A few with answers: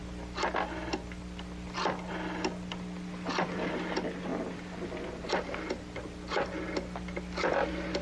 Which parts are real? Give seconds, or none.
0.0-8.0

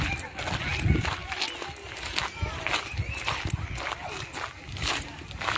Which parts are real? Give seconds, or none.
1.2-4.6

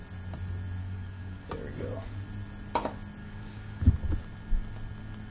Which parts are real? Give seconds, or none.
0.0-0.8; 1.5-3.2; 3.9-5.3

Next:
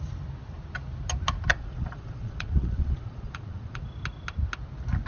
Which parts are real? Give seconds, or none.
0.0-1.5; 3.8-5.1

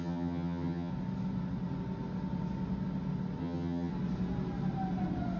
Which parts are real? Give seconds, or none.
0.9-3.4; 3.9-5.4